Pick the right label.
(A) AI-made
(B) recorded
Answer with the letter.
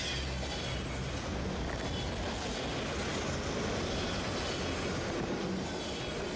B